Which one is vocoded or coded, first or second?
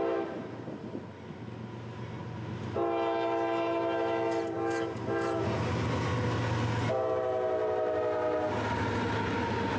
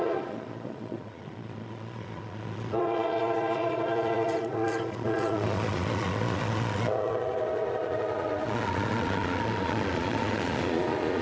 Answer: second